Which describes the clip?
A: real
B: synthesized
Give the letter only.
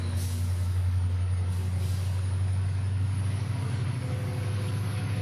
B